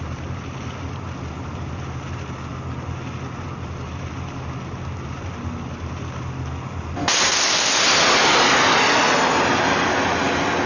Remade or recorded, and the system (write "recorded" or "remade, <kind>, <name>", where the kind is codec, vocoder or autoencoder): recorded